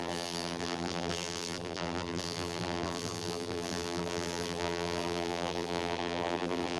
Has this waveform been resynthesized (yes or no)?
yes